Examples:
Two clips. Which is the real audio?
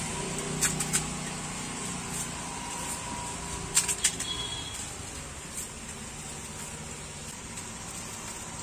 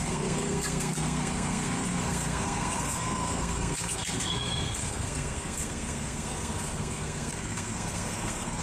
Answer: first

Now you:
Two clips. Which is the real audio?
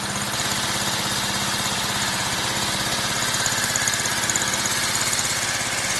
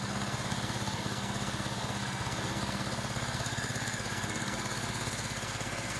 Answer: first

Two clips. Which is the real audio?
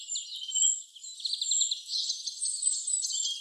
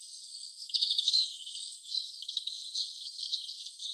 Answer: first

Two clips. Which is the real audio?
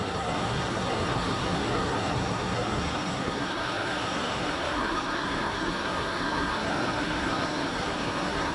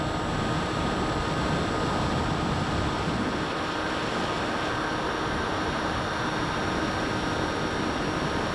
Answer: second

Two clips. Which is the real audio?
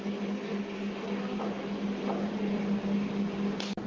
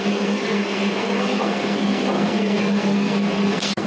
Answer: first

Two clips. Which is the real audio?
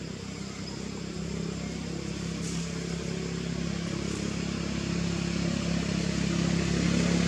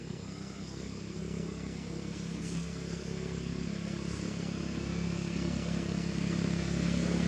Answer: first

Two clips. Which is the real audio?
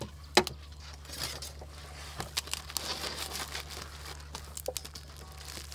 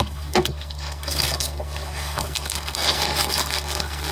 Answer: first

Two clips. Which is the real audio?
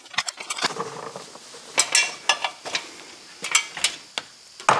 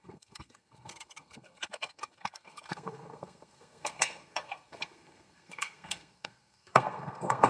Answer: first